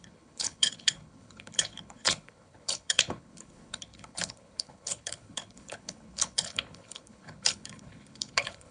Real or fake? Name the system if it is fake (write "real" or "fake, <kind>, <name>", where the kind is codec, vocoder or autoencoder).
fake, codec, HILCodec